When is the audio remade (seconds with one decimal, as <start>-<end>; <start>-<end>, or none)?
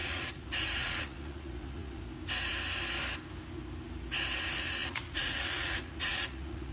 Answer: 0.0-2.0; 4.8-6.7